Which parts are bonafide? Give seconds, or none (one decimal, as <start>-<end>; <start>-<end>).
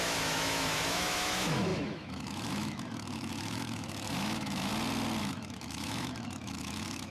4.7-5.2